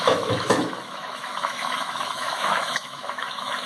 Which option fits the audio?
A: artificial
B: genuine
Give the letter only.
A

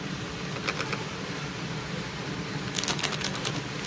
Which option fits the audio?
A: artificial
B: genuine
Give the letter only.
B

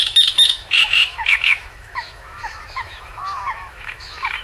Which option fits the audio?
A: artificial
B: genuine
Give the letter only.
A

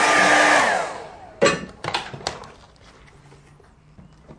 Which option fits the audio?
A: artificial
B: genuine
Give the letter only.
B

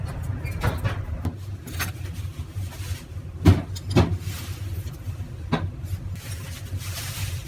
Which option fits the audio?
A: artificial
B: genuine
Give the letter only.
B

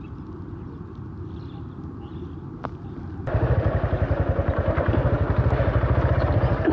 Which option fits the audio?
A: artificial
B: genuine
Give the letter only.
B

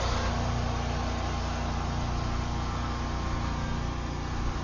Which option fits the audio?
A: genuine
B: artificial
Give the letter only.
A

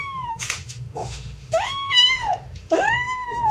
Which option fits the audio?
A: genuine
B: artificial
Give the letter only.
B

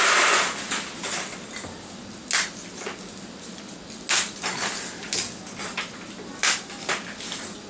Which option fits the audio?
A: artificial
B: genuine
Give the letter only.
B